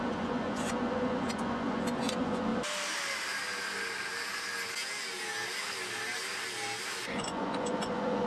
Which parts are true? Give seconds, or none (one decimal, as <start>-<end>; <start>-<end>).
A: 2.5-7.0